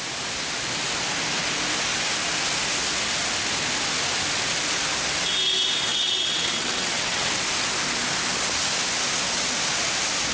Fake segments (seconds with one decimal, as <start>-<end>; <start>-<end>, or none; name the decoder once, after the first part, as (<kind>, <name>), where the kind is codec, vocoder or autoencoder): 5.9-7.4 (vocoder, WaveNeXt)

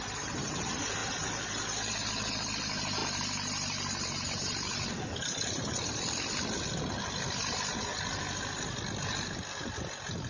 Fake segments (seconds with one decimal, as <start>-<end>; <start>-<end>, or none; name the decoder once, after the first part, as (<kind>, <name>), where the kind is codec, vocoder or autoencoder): none